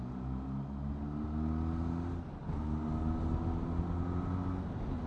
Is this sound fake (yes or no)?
no